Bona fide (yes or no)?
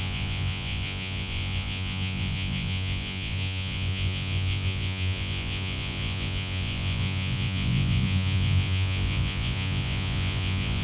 no